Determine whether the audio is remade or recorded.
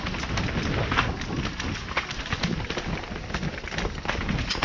recorded